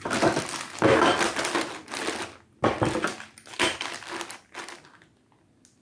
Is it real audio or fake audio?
real